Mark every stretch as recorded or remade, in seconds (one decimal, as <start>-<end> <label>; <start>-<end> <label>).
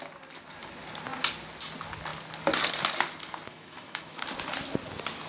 0.0-3.5 recorded; 3.5-4.2 remade; 4.2-5.3 recorded